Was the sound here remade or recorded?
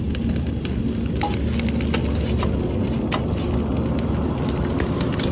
recorded